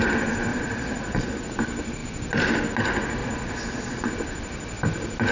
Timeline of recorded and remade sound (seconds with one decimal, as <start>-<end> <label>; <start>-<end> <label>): 0.0-0.5 recorded; 0.5-1.4 remade; 1.4-3.2 recorded; 3.2-4.1 remade; 4.1-5.3 recorded